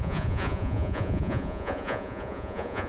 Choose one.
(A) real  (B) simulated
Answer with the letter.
B